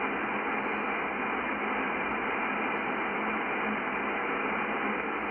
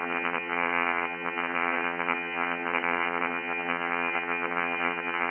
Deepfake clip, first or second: second